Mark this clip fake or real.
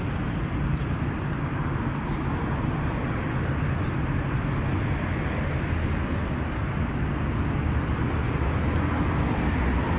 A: real